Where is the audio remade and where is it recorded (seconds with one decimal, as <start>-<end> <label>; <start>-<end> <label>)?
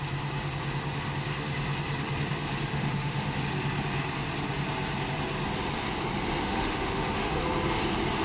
0.0-2.7 recorded; 2.7-3.4 remade; 3.4-6.4 recorded; 6.4-7.4 remade; 7.4-8.2 recorded